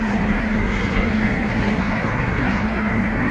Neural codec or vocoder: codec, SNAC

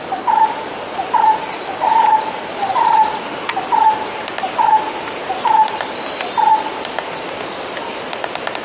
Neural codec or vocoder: none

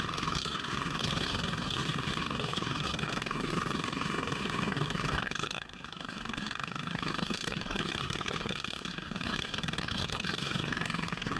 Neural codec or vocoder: codec, SNAC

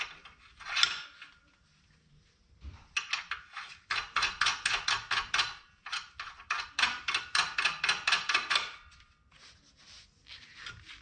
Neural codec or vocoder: none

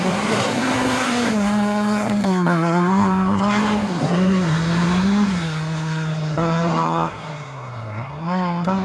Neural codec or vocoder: codec, SNAC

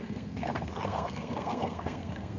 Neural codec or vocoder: codec, SNAC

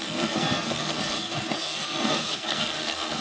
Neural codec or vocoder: codec, SNAC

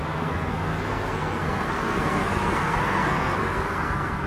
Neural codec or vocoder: codec, SNAC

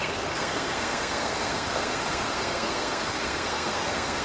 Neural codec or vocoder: codec, SNAC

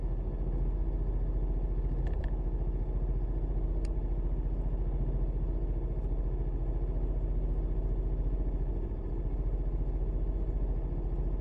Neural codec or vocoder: none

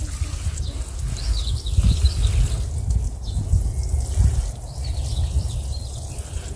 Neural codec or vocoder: none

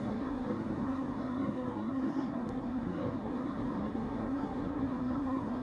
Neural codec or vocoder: codec, SNAC